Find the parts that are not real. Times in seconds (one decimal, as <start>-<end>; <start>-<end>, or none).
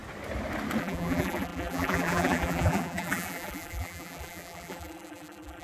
0.8-5.6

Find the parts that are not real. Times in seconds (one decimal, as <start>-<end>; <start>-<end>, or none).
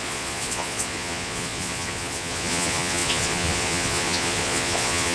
0.0-5.1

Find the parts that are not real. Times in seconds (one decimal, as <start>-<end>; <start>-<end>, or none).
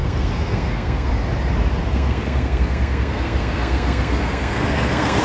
0.0-1.1; 1.8-5.2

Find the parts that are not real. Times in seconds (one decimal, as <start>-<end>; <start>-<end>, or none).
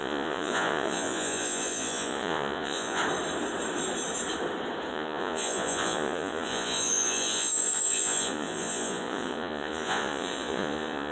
0.0-3.0; 4.9-11.1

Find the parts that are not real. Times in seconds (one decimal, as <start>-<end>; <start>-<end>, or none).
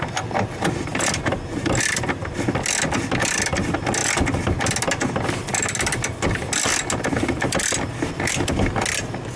none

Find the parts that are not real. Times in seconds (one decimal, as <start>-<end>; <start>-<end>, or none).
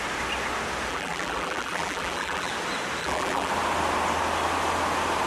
0.9-2.5; 3.0-3.5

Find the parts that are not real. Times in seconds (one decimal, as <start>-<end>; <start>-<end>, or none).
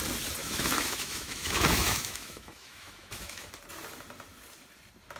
0.4-3.5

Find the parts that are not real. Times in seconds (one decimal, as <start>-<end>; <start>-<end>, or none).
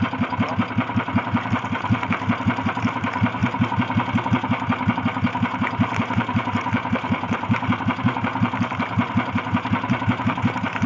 0.0-10.9